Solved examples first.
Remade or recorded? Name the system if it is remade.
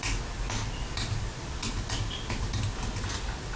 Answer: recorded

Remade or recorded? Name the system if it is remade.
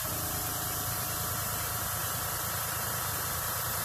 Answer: remade, vocoder, BigVGAN v2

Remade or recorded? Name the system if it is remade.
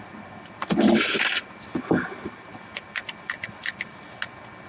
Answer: recorded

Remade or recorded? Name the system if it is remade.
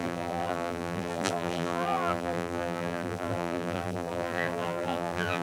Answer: remade, vocoder, BigVGAN v2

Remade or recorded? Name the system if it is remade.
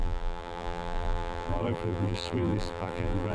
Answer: remade, vocoder, BigVGAN v2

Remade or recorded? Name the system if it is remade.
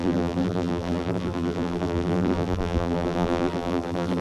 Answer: remade, vocoder, BigVGAN v2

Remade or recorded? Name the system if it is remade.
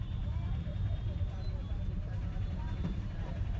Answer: remade, vocoder, BigVGAN v2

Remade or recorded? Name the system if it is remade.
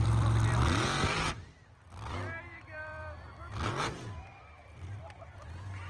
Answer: remade, vocoder, BigVGAN v2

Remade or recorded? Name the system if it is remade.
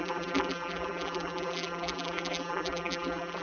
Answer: remade, vocoder, BigVGAN v2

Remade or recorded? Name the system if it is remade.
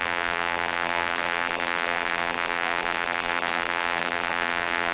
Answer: remade, vocoder, BigVGAN v2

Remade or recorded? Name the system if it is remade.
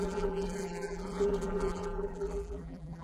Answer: remade, vocoder, BigVGAN v2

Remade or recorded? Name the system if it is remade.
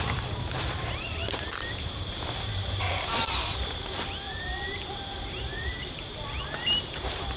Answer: remade, vocoder, BigVGAN v2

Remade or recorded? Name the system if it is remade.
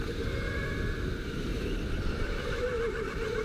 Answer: recorded